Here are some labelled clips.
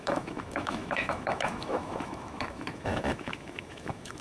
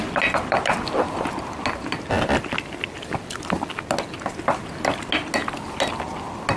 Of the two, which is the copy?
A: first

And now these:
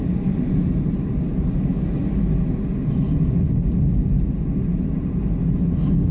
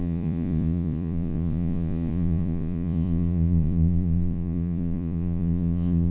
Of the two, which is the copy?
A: second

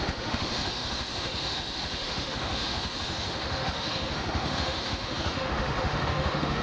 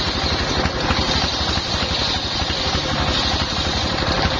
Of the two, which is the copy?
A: first